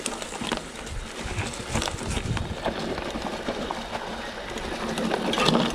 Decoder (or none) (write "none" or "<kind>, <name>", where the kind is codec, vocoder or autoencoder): none